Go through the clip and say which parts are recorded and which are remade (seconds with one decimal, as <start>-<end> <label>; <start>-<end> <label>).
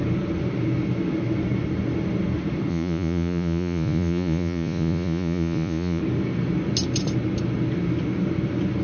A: 0.0-2.7 recorded; 2.7-6.0 remade; 6.0-8.8 recorded